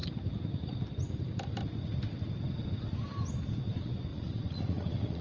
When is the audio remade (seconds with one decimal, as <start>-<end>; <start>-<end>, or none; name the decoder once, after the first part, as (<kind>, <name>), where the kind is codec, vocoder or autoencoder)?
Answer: 4.1-5.2 (vocoder, Vocos)